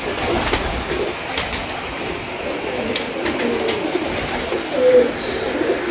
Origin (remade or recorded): recorded